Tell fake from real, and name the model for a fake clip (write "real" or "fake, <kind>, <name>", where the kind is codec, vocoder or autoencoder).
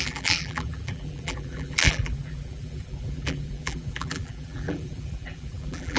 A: fake, vocoder, BigVGAN v2